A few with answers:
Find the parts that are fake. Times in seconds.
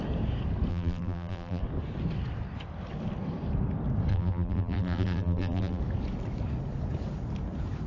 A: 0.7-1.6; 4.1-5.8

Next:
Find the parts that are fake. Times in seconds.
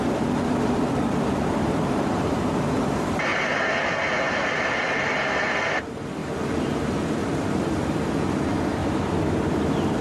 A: 0.0-8.8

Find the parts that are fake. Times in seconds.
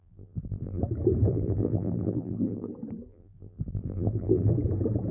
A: 0.0-0.8; 1.3-2.7; 3.1-4.5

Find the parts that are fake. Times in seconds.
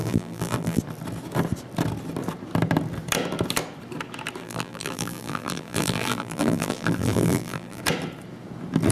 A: 0.0-0.8; 4.4-7.8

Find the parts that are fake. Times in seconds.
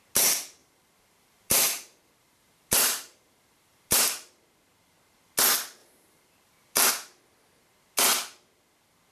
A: 0.6-4.0; 5.8-6.9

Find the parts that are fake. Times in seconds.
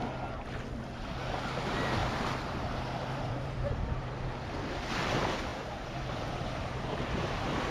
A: 2.0-4.1; 5.5-7.3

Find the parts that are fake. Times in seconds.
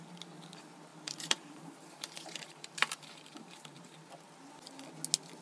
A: 0.9-4.1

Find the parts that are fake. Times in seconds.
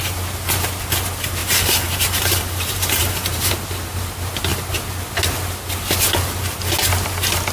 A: 1.4-3.5